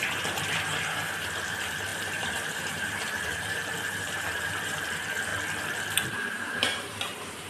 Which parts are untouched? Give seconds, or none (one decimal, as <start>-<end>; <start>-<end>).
5.3-6.1